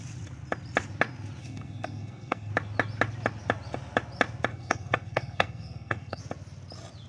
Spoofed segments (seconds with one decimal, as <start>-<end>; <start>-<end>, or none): 1.4-2.5; 4.5-6.2